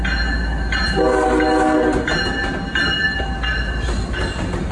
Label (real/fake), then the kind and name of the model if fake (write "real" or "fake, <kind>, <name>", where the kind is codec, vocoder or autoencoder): real